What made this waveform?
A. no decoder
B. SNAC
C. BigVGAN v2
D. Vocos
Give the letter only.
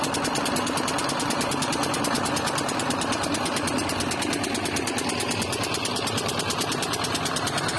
A